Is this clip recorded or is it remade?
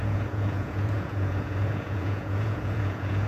remade